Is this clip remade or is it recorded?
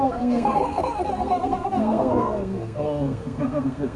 remade